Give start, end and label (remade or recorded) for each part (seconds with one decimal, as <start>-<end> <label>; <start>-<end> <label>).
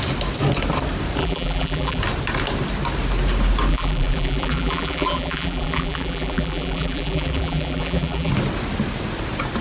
0.0-1.2 recorded; 1.2-2.0 remade; 2.0-3.7 recorded; 3.7-8.3 remade; 8.3-9.6 recorded